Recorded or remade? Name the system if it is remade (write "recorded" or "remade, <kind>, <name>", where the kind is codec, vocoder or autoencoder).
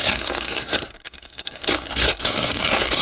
remade, codec, SNAC